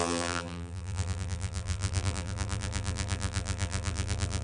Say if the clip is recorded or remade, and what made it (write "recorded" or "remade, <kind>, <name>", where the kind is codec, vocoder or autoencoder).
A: remade, vocoder, BigVGAN v2